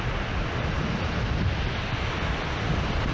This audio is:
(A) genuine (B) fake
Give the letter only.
A